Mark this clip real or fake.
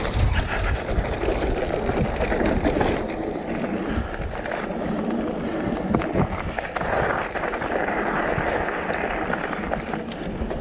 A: real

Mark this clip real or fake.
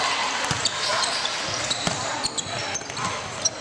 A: real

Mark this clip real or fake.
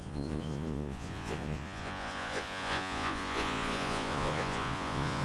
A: fake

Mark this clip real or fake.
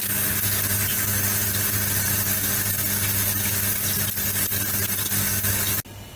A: real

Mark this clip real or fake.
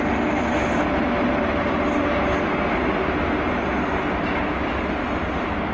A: real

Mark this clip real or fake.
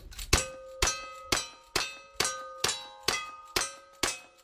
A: real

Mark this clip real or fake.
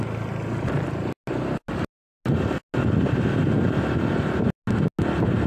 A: real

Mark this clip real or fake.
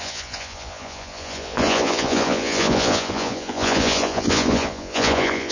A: fake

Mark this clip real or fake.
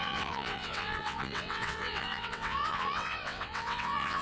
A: fake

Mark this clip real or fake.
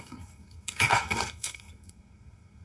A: fake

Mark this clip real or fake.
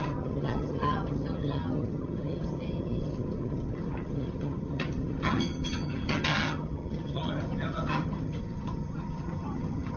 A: fake